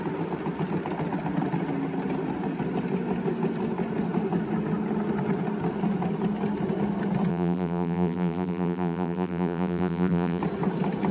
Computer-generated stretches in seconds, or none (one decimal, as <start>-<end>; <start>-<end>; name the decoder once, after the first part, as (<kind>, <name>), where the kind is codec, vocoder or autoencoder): 7.3-10.4 (vocoder, BigVGAN v2)